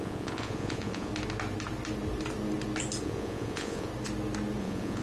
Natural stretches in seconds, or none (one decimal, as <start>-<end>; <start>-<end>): 1.1-3.0; 3.9-4.6